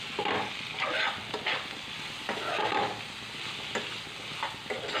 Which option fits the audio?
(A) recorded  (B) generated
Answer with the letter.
A